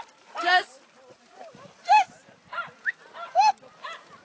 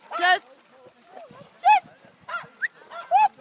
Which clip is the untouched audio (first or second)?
second